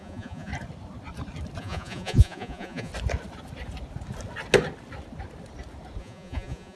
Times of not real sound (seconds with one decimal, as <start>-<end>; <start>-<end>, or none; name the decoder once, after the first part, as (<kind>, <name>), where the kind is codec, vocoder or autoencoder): 0.0-0.5 (vocoder, Vocos); 1.6-2.9; 6.0-6.8